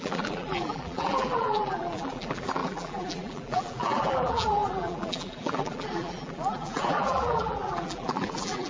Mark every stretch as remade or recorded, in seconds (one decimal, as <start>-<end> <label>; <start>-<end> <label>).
0.0-8.7 remade